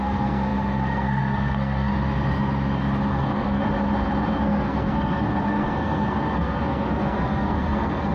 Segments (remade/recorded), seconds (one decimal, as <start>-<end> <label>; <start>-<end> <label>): 0.0-1.9 remade; 1.9-3.1 recorded; 3.1-3.6 remade; 3.6-4.4 recorded; 4.4-8.1 remade